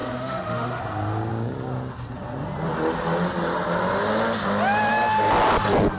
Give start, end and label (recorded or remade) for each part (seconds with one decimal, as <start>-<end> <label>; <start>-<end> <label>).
0.0-0.8 remade; 0.8-6.0 recorded